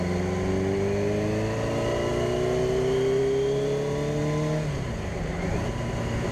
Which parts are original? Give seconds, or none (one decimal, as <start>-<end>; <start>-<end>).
0.0-6.3